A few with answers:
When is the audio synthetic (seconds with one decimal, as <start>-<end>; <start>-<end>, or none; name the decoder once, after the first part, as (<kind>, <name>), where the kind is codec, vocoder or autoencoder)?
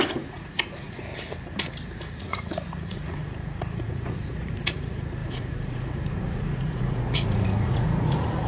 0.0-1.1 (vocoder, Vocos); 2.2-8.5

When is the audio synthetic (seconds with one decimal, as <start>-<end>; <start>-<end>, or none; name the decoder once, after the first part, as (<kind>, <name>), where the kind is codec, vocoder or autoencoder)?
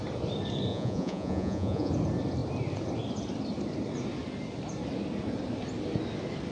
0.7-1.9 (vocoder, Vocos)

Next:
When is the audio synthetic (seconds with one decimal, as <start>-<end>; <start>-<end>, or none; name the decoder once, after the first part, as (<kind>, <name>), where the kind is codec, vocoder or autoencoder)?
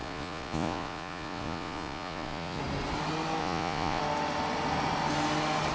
0.0-2.6 (vocoder, Vocos); 3.4-4.0